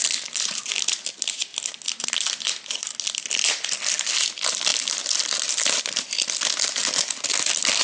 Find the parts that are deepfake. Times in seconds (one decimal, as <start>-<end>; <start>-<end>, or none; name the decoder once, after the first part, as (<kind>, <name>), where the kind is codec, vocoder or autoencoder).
none